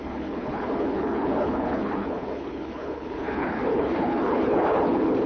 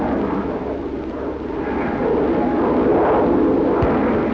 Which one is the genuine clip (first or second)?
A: second